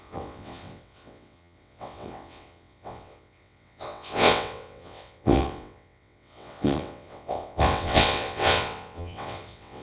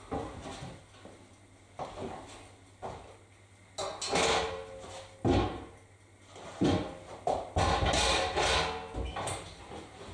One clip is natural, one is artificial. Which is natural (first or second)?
second